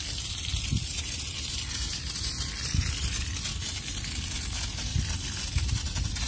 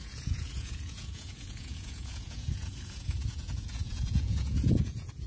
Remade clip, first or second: second